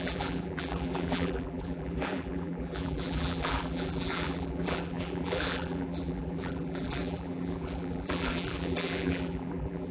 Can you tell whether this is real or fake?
fake